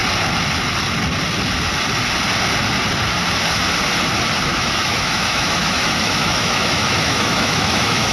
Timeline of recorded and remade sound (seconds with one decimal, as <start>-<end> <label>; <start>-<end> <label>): 0.0-4.5 recorded; 4.5-8.1 remade